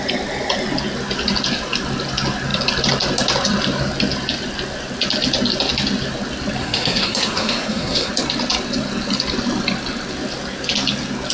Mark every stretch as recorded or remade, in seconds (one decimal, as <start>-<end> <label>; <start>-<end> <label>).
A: 0.0-6.6 recorded; 6.6-8.1 remade; 8.1-11.3 recorded